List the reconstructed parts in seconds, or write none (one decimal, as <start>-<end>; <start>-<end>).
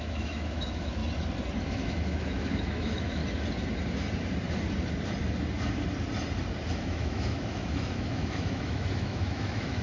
0.0-1.0; 1.6-3.2; 6.7-9.8